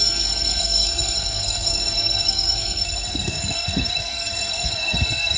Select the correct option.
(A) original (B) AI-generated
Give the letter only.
B